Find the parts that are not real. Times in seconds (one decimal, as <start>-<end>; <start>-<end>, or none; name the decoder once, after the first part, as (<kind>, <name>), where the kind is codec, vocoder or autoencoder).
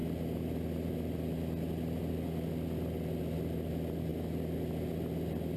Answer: none